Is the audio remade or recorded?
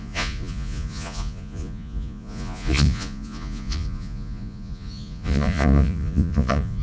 remade